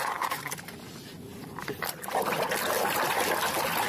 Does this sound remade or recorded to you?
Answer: recorded